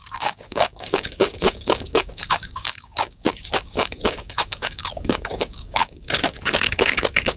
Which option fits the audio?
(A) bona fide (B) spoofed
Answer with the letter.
B